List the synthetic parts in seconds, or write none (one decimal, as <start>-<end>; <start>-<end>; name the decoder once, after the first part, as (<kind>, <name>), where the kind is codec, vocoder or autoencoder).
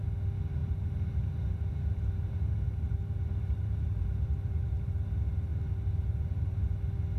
0.6-4.9 (vocoder, BigVGAN v2); 5.5-6.6